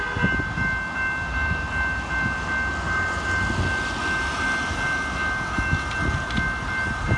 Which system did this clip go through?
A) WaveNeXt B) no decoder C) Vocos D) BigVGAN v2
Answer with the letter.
B